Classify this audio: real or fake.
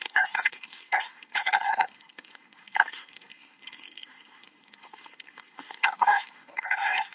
fake